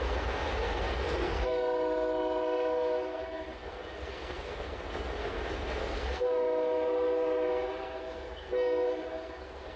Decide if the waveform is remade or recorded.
remade